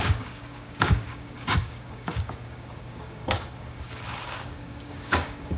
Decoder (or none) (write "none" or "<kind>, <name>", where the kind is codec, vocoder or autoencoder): codec, DAC